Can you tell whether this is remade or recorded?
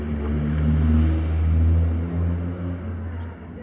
recorded